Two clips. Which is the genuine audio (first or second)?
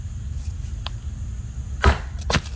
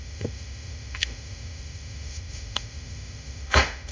first